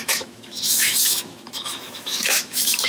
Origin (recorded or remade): remade